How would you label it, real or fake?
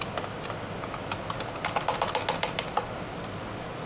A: real